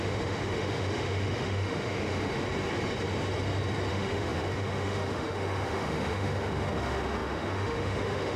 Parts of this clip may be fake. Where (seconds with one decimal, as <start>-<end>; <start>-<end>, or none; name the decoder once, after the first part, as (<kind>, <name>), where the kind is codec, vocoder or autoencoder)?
0.0-2.3 (autoencoder, DAC-VAE); 3.9-8.4